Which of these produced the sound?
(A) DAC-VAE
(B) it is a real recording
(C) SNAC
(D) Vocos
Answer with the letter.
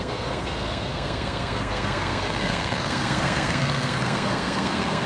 C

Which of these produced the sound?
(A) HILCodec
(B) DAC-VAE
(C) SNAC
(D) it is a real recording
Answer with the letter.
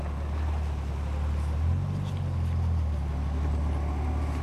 D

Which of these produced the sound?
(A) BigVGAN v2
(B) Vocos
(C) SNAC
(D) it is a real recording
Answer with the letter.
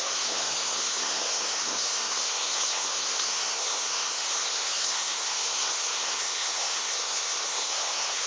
C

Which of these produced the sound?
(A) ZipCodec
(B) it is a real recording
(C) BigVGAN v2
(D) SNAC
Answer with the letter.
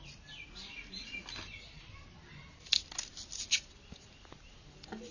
B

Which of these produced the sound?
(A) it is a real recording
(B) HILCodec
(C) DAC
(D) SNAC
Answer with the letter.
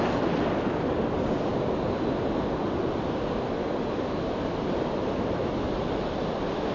A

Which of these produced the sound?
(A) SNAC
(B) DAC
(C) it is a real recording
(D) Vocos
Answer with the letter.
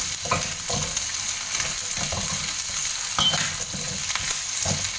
C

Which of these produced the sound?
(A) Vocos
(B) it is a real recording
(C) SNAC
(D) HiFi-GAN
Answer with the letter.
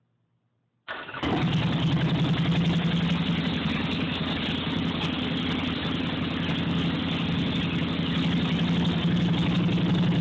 B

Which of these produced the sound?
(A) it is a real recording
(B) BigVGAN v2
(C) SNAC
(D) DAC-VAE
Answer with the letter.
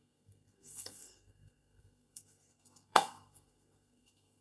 C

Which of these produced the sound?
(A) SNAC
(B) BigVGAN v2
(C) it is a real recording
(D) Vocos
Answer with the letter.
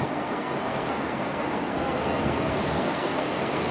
A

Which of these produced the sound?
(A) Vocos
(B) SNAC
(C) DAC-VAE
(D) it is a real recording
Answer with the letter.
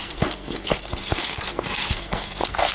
B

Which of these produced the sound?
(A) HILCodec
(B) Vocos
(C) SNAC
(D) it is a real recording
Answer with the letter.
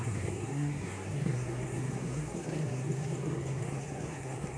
C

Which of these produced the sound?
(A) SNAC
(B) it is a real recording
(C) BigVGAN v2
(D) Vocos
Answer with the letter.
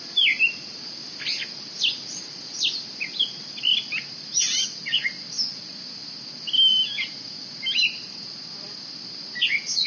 B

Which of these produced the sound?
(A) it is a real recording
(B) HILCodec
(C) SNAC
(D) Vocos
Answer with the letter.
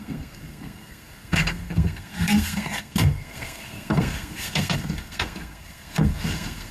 C